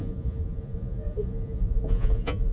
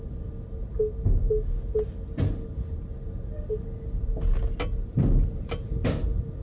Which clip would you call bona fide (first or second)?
second